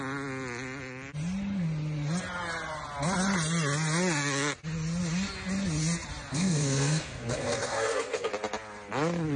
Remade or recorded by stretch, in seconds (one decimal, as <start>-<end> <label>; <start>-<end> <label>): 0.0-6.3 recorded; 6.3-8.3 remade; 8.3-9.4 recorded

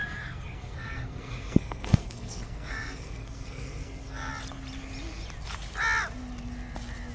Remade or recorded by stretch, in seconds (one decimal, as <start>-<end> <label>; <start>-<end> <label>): 0.0-4.3 remade; 4.3-7.1 recorded

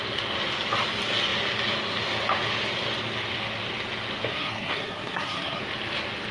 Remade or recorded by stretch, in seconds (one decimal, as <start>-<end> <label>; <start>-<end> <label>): 0.0-4.3 recorded; 4.3-5.6 remade; 5.6-6.3 recorded

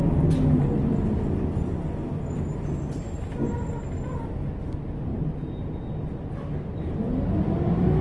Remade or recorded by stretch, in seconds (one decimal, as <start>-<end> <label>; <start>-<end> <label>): 0.0-8.0 recorded

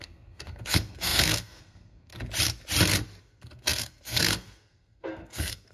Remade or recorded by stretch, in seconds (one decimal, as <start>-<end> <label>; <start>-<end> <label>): 0.0-2.1 remade; 2.1-3.2 recorded; 3.2-5.7 remade